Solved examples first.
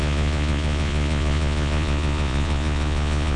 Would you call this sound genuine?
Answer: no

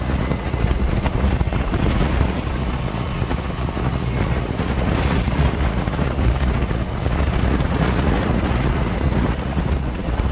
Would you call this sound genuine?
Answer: no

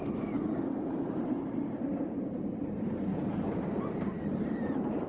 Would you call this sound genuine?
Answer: no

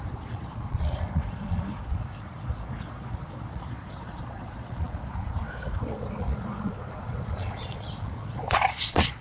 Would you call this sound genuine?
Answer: no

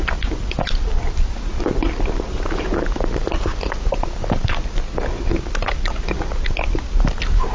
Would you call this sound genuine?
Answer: yes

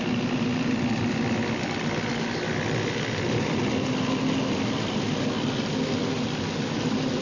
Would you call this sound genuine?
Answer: yes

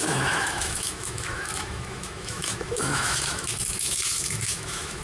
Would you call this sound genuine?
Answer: no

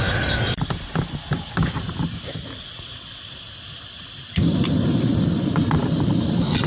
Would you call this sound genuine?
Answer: yes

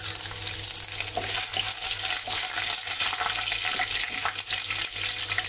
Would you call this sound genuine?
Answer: yes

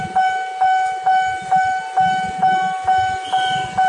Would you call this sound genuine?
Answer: yes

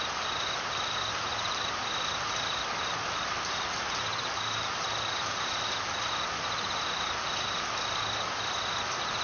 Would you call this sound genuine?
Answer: yes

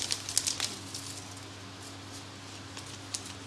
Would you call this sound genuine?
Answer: yes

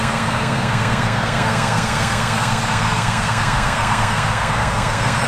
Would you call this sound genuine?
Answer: no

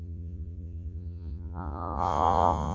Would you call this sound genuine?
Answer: no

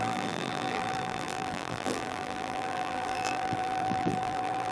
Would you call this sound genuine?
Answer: no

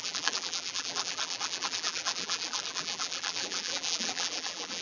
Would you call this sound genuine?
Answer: no